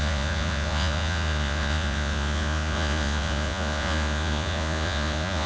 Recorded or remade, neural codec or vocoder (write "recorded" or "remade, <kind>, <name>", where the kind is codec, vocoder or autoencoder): remade, vocoder, Vocos